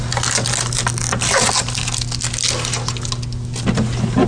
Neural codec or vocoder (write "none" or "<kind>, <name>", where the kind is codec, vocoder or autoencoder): none